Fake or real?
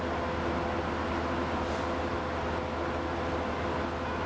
real